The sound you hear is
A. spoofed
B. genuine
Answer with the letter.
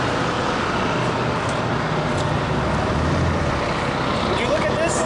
B